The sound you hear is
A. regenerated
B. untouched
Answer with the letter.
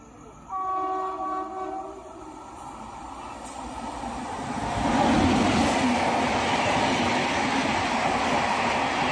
B